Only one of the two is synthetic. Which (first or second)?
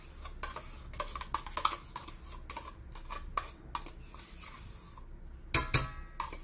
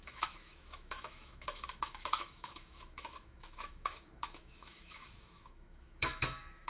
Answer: second